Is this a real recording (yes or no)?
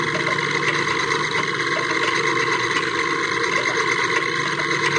yes